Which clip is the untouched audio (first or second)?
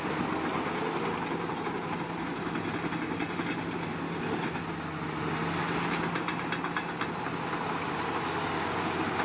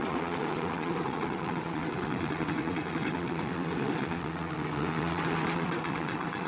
first